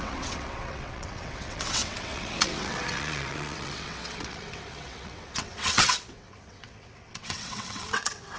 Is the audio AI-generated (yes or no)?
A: yes